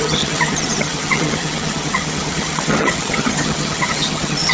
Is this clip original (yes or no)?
no